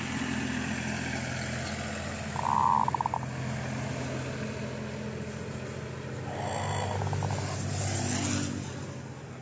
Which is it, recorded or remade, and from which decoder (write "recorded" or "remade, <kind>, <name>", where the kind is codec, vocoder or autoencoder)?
recorded